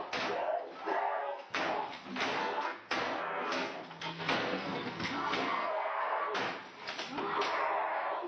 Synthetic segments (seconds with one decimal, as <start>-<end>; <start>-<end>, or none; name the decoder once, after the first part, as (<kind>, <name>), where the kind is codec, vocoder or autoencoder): 0.9-1.6 (codec, SNAC); 2.4-6.2